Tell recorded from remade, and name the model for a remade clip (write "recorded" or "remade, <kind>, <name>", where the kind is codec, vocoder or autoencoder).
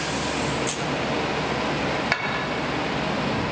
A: recorded